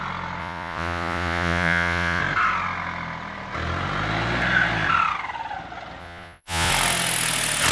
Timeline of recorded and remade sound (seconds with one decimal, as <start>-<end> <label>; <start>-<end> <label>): 0.0-0.4 recorded; 0.4-2.2 remade; 2.2-6.0 recorded; 6.0-6.7 remade; 6.7-7.7 recorded